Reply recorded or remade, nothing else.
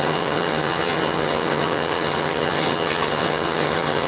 remade